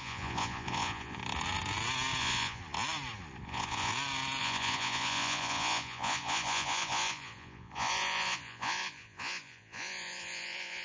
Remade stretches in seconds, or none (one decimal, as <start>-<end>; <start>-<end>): 0.0-1.2; 2.2-2.6; 3.4-3.9; 4.4-10.8